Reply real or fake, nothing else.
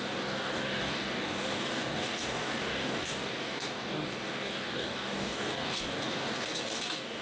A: fake